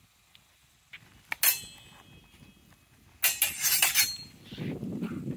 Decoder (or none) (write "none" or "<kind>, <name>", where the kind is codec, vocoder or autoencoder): none